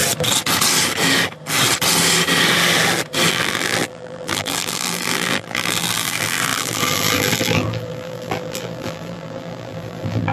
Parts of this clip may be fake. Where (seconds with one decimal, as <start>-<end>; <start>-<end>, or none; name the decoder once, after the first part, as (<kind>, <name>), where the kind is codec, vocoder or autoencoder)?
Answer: 3.3-10.3 (vocoder, BigVGAN v2)